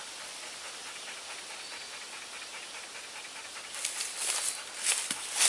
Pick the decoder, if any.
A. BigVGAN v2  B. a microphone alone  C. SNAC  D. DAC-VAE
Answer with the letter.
B